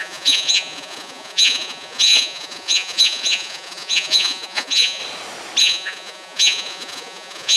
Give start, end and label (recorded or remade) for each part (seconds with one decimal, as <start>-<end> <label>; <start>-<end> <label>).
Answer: 0.0-5.0 remade; 5.0-5.6 recorded; 5.6-7.6 remade